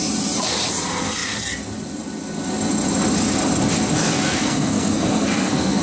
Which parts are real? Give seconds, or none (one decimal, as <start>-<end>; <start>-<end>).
0.0-4.0